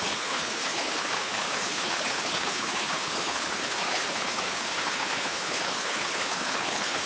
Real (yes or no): no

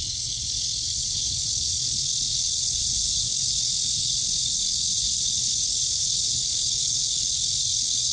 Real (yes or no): no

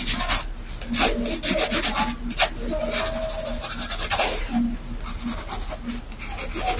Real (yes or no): yes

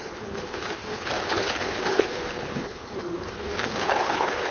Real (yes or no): no